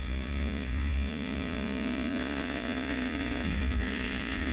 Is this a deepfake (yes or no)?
yes